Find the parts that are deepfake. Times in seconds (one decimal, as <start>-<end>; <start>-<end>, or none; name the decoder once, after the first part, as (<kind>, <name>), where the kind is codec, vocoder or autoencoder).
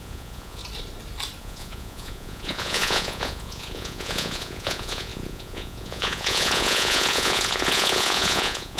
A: 0.0-0.6 (vocoder, Vocos); 1.4-8.8